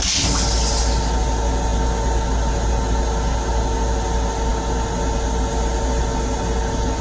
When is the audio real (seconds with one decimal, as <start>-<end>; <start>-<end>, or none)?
0.0-7.0